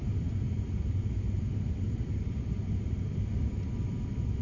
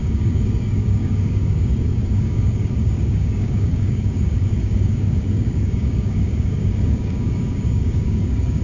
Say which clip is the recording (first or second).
first